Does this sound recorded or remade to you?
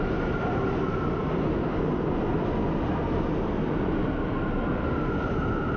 recorded